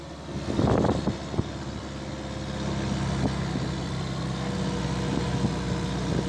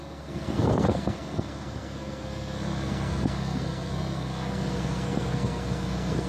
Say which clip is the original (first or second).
first